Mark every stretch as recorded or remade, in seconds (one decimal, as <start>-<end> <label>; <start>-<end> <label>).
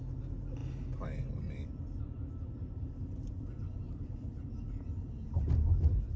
0.0-6.2 recorded